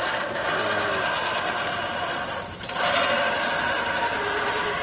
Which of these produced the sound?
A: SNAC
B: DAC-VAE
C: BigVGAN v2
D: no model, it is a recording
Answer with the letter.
D